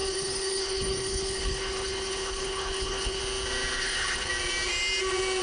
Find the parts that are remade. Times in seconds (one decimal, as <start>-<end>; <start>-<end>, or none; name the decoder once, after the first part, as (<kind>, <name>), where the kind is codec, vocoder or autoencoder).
0.0-3.2 (codec, HILCodec); 3.8-4.3